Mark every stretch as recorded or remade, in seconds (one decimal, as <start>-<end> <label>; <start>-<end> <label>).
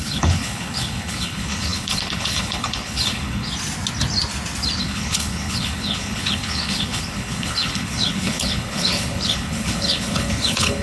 0.0-3.5 remade; 3.5-4.8 recorded; 4.8-10.8 remade